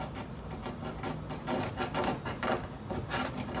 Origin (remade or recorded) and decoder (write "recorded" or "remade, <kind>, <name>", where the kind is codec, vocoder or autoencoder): recorded